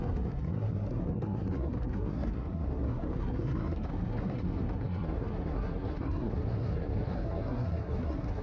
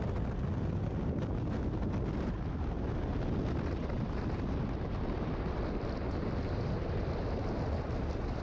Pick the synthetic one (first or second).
first